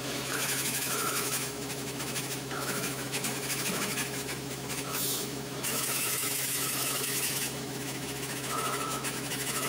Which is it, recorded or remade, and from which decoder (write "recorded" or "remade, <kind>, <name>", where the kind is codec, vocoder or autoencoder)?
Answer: remade, autoencoder, DAC-VAE